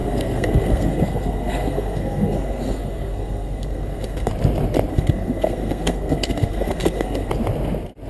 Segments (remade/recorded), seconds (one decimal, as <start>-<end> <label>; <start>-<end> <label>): 0.0-4.3 remade; 4.3-4.9 recorded; 4.9-7.3 remade; 7.3-8.1 recorded